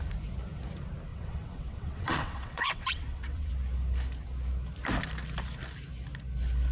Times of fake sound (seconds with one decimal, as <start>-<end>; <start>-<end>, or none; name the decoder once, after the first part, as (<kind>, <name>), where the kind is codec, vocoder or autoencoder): 1.1-3.5 (vocoder, WaveNeXt)